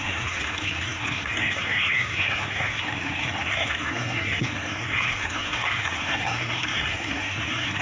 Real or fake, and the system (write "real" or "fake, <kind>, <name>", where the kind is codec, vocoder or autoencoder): fake, codec, SNAC